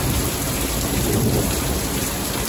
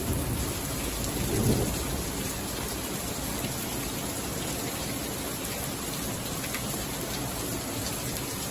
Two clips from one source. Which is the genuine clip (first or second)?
second